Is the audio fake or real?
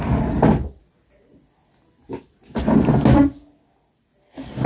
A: real